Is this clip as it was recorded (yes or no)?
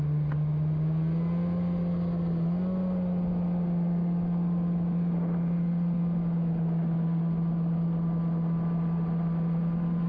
yes